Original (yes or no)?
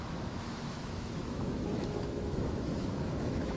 no